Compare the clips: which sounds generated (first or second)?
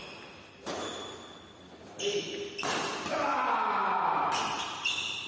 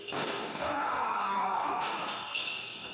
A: second